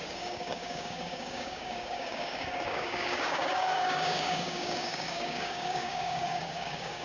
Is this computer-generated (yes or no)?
yes